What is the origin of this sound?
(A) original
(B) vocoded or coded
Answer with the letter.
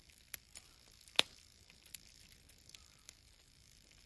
A